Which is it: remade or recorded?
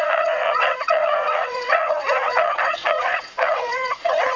remade